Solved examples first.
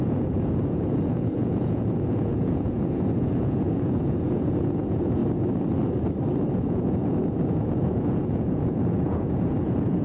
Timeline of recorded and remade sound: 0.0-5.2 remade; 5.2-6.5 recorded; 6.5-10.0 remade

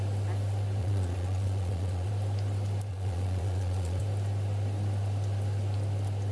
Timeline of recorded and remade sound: 0.0-0.8 recorded; 0.8-2.1 remade; 2.1-2.9 recorded; 2.9-4.0 remade; 4.0-6.3 recorded

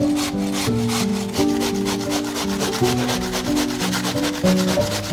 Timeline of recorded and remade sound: 0.0-5.1 recorded